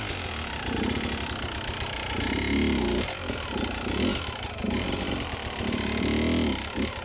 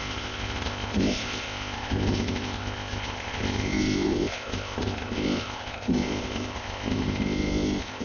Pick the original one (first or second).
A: first